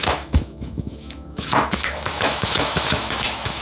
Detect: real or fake fake